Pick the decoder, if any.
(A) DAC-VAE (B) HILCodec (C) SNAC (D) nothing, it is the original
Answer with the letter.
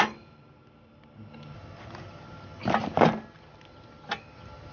D